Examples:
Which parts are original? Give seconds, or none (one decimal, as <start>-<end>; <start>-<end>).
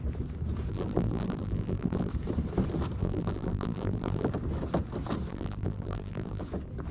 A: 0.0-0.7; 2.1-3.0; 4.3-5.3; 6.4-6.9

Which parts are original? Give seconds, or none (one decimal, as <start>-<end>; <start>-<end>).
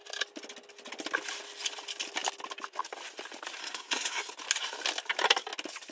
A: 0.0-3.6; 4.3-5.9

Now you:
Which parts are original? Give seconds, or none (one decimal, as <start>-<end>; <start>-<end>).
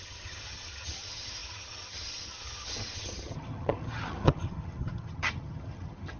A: none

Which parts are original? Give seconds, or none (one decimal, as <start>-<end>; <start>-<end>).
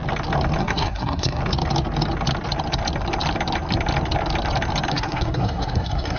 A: 0.0-0.6; 1.4-4.9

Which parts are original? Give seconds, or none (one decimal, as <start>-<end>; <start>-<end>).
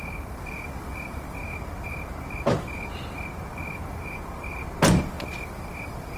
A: 1.4-5.1